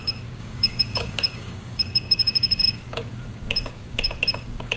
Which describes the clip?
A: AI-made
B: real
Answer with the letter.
A